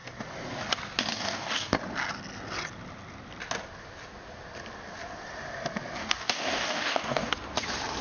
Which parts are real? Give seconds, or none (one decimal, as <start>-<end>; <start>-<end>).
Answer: 0.0-1.1; 1.8-6.0; 7.3-8.0